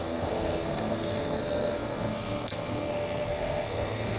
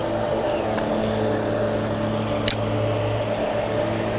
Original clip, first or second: second